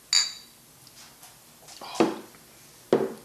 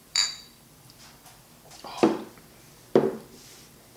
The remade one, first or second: second